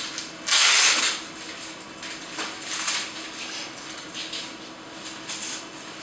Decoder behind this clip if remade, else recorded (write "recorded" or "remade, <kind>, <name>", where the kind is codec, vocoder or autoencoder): recorded